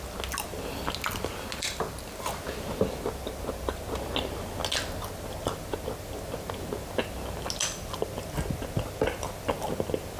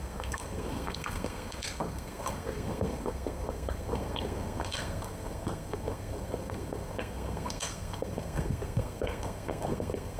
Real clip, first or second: first